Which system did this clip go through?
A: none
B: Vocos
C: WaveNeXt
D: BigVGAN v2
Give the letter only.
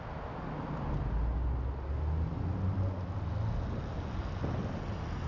A